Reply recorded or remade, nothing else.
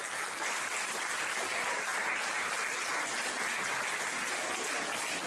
recorded